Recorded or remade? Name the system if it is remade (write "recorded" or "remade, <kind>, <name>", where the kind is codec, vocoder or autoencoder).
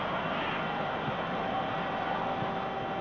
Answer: recorded